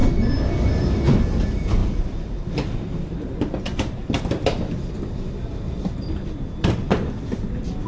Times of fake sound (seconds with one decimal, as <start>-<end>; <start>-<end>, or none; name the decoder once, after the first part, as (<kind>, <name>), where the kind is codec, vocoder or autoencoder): 0.6-7.9 (vocoder, BigVGAN v2)